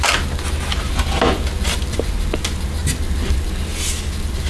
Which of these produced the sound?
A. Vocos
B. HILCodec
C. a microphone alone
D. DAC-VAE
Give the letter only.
C